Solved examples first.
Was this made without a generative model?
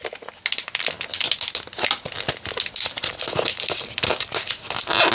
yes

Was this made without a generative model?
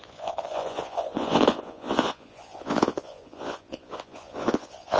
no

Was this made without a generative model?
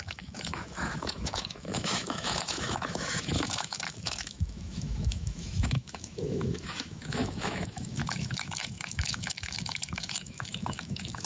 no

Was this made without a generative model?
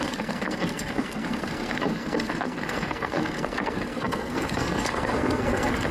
no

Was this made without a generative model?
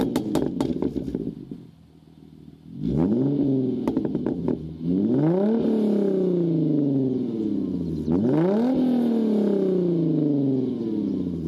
yes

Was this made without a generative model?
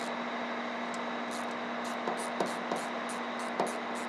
yes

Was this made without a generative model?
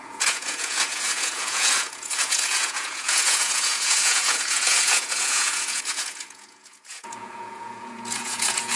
no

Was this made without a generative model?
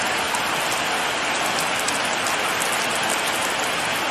yes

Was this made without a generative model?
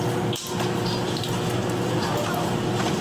yes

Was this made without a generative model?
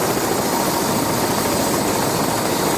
yes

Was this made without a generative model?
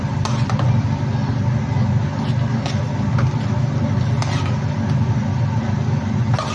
yes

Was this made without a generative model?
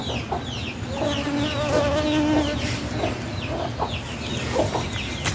yes